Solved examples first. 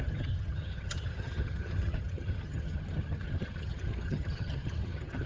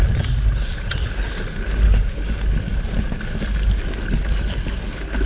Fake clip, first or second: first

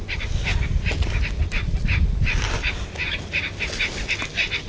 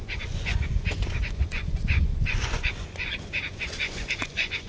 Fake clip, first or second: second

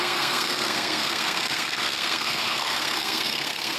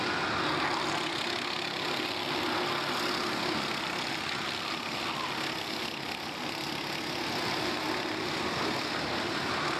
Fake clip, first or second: first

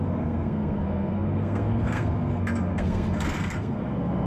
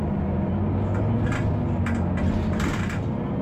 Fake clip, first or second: first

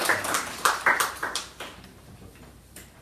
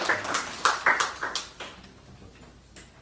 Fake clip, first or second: first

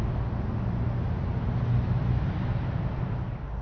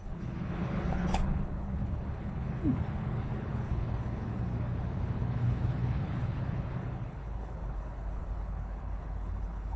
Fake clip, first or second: second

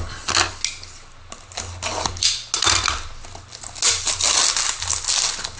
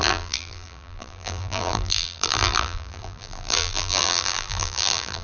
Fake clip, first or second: second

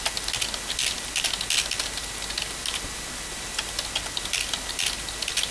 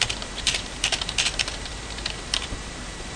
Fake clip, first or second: second